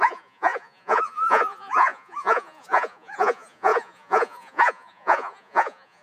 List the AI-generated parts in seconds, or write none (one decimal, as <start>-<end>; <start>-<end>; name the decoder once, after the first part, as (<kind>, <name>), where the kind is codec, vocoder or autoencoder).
0.0-6.0 (vocoder, Vocos)